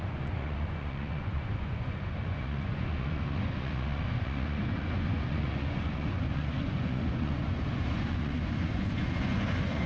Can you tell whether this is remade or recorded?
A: remade